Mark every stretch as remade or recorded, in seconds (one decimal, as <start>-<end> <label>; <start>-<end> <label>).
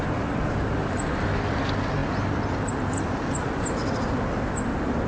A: 0.0-5.1 recorded